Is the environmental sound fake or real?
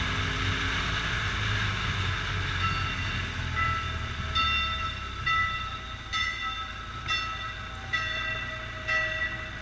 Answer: real